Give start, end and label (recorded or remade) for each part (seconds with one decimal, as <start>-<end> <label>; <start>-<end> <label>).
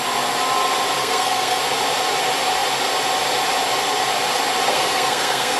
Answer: 0.0-1.0 recorded; 1.0-1.6 remade; 1.6-4.7 recorded; 4.7-5.6 remade